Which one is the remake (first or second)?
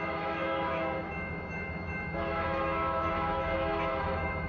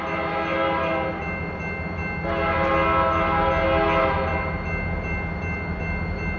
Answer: first